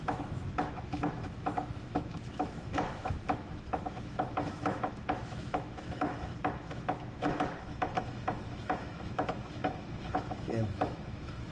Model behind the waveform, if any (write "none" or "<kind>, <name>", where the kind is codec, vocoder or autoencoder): autoencoder, DAC-VAE